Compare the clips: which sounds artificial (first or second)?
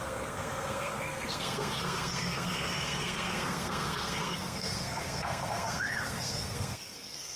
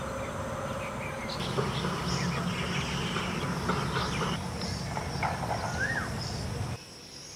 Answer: first